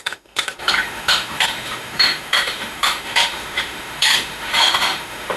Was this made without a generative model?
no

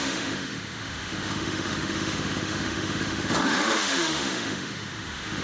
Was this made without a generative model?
no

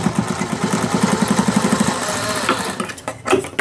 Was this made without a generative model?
yes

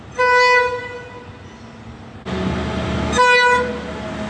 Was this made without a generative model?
yes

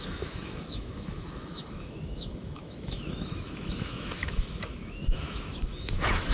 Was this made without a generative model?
no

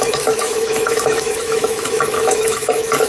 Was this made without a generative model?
no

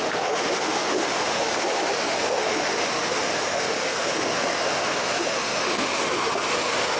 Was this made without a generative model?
no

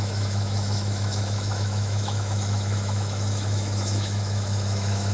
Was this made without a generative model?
no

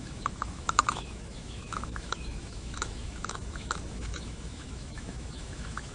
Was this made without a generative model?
no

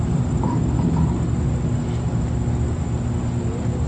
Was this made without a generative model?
yes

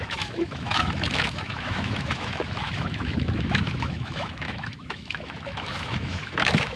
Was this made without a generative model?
no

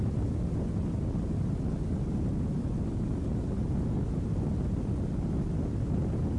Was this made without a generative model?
yes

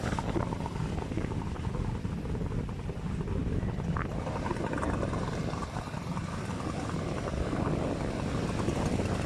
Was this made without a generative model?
yes